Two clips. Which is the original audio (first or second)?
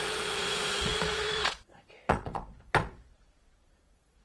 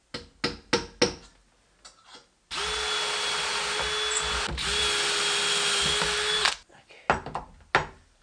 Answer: second